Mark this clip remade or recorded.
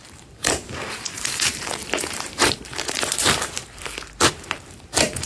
remade